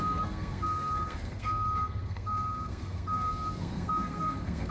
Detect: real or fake fake